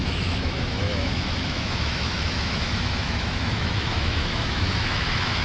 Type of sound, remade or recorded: remade